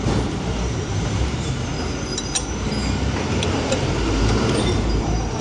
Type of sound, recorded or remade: remade